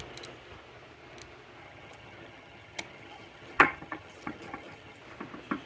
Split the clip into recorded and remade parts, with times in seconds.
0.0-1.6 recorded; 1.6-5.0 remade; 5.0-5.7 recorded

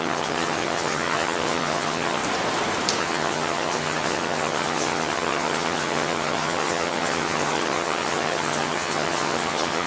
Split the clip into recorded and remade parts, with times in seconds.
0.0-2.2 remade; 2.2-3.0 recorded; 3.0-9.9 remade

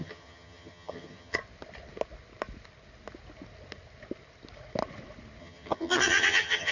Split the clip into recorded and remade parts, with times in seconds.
0.0-1.4 remade; 1.4-5.4 recorded; 5.4-6.7 remade